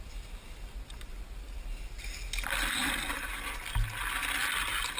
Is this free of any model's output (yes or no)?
yes